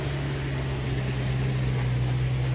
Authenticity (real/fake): real